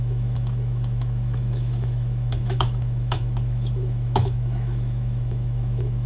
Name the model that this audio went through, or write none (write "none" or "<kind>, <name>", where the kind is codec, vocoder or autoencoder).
autoencoder, DAC-VAE